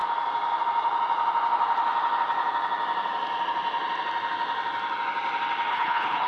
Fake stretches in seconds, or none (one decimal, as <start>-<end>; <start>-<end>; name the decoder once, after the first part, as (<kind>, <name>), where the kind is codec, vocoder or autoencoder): 5.7-6.3 (codec, HILCodec)

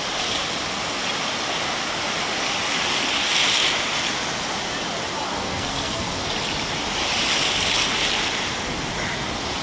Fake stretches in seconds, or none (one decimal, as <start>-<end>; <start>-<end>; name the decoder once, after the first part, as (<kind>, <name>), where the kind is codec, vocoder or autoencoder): 5.3-6.2 (codec, SNAC)

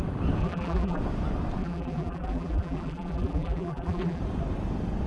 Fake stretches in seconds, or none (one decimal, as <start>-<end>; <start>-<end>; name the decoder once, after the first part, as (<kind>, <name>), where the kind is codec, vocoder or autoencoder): 0.4-1.0 (vocoder, BigVGAN v2); 1.6-4.2

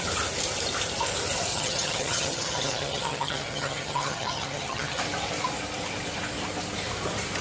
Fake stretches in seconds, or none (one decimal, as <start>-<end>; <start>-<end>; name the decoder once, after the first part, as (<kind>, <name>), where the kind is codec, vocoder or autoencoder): 1.5-5.0 (vocoder, HiFi-GAN)